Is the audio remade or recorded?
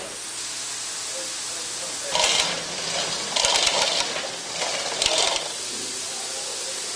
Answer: recorded